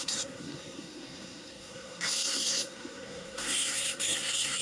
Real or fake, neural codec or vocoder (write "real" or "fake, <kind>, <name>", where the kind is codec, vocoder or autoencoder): fake, codec, SNAC